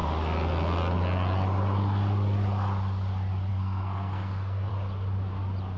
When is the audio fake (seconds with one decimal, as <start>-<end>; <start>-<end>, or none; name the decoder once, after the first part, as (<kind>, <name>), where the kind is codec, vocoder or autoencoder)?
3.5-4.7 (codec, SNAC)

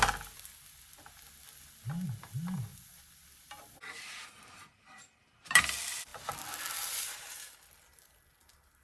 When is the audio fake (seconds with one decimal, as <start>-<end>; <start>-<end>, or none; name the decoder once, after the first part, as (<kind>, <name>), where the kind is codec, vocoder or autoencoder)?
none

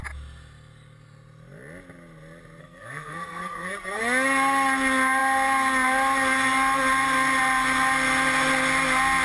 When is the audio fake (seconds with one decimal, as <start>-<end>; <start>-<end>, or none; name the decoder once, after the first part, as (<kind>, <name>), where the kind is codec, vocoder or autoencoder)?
2.6-4.0 (codec, SNAC)